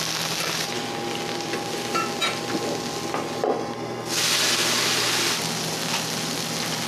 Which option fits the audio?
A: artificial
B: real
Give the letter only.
B